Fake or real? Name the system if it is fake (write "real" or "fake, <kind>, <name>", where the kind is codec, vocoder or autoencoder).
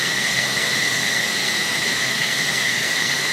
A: fake, codec, SNAC